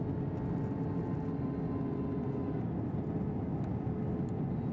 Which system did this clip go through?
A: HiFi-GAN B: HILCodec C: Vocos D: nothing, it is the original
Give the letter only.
D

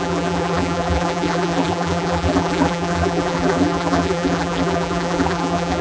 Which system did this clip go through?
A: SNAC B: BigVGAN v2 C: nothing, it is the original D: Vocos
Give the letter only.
B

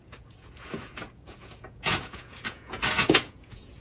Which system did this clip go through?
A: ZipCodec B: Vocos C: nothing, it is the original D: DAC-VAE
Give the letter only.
B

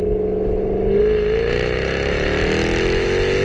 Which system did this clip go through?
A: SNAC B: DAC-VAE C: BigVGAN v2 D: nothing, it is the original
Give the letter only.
D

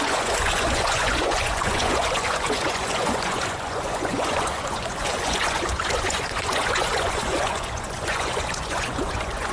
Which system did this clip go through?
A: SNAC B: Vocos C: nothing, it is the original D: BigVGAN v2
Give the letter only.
B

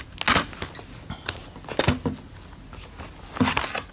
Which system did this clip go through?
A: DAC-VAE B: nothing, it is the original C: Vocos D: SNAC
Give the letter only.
B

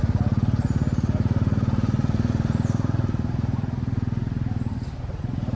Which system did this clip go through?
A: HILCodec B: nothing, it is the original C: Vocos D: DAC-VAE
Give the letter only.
B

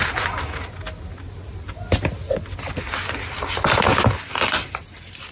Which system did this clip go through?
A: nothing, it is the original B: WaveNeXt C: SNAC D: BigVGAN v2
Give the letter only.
A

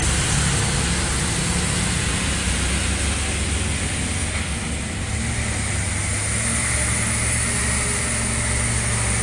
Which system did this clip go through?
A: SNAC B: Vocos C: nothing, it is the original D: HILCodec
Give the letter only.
C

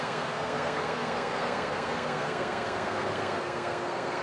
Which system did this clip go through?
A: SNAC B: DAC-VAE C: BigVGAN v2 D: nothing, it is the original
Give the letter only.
A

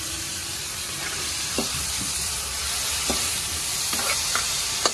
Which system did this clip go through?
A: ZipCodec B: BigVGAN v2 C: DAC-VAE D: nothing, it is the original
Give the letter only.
B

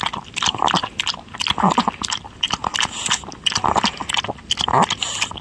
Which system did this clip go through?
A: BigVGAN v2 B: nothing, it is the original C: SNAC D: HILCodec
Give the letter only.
B